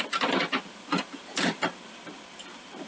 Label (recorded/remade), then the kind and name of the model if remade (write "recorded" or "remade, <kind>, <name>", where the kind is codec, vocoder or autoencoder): remade, vocoder, BigVGAN v2